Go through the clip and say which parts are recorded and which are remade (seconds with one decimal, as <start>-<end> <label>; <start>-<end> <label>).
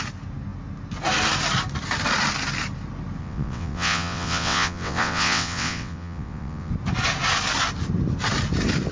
0.0-3.2 recorded; 3.2-6.7 remade; 6.7-8.9 recorded